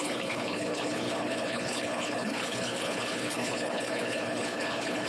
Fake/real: fake